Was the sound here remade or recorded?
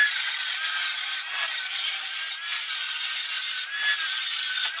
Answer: recorded